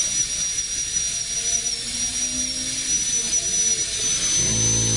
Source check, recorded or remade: recorded